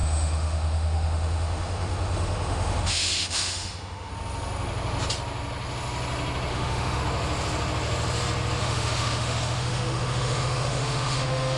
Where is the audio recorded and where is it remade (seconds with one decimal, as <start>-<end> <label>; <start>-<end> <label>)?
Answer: 0.0-4.1 remade; 4.1-6.5 recorded; 6.5-7.0 remade; 7.0-8.6 recorded; 8.6-11.6 remade